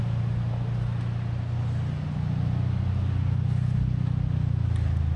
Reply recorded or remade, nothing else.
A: recorded